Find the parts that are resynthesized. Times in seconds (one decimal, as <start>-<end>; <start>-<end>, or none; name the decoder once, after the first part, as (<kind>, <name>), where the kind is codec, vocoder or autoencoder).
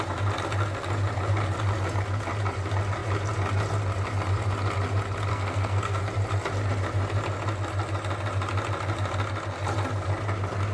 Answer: 5.3-6.0 (codec, SNAC)